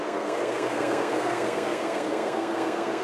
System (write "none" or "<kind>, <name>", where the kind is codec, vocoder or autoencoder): codec, SNAC